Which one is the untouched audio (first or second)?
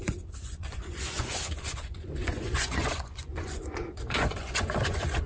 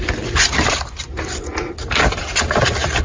second